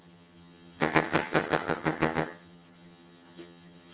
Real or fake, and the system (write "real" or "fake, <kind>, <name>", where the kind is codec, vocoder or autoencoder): fake, vocoder, HiFi-GAN